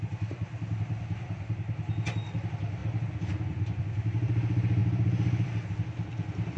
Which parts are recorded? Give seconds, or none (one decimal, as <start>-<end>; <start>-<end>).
0.0-6.6